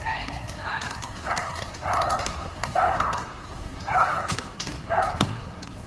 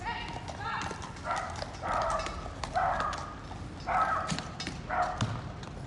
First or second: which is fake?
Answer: first